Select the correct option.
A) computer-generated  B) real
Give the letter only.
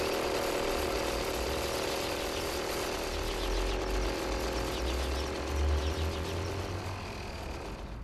B